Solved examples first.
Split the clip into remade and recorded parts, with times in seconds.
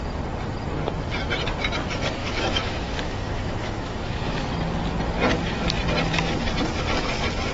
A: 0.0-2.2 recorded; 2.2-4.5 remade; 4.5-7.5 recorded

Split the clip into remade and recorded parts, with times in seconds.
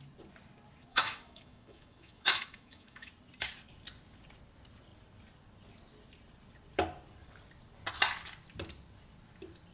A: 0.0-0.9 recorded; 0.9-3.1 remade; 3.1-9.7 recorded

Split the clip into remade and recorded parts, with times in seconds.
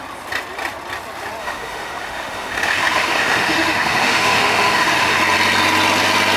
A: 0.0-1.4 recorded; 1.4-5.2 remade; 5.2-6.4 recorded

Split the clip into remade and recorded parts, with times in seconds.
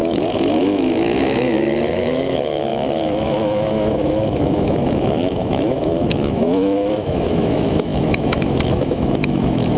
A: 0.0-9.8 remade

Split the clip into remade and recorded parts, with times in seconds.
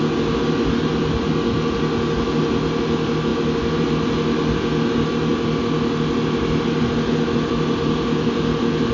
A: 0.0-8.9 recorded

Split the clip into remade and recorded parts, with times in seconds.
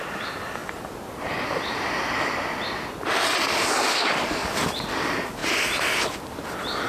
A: 0.0-6.9 recorded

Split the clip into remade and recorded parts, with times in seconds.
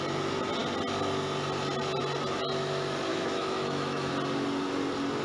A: 0.0-3.1 recorded; 3.1-4.1 remade; 4.1-5.2 recorded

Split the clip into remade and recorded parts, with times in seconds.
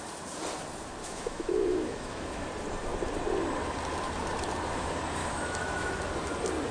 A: 0.0-1.0 recorded; 1.0-2.5 remade; 2.5-5.2 recorded; 5.2-5.9 remade; 5.9-6.7 recorded